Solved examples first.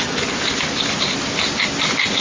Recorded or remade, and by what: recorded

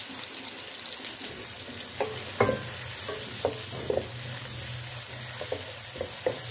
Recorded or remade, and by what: recorded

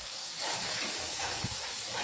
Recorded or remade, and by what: remade, codec, DAC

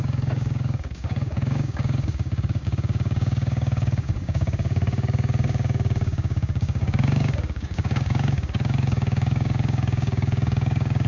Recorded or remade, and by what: remade, codec, DAC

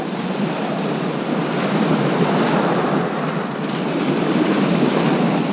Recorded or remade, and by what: recorded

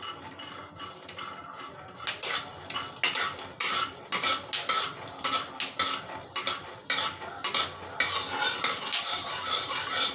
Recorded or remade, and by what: recorded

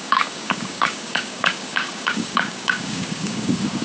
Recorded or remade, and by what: remade, codec, DAC